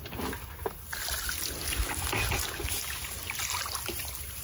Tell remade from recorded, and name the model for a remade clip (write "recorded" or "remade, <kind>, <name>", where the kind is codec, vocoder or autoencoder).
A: recorded